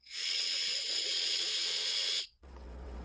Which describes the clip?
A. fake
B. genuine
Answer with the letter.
A